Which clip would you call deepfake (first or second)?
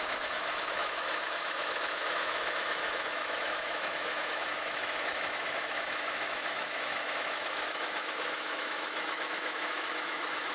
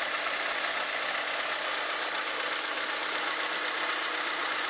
first